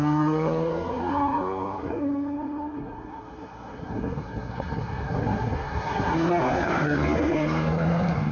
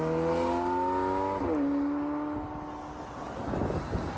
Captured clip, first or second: second